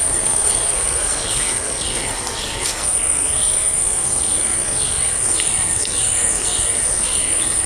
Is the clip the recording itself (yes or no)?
no